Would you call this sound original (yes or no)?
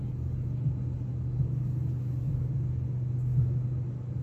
yes